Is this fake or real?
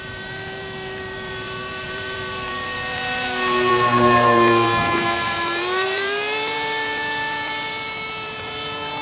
fake